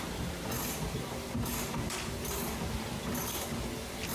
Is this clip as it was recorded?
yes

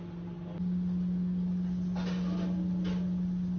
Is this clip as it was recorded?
yes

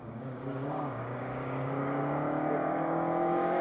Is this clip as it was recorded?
no